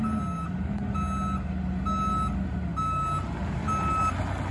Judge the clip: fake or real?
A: real